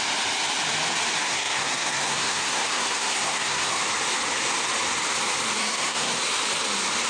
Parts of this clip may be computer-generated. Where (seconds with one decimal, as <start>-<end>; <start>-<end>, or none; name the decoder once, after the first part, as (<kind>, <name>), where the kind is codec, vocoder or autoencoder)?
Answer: 1.2-3.8 (codec, SNAC); 5.6-6.2